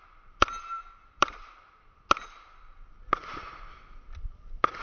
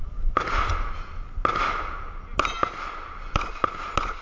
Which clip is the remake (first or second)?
first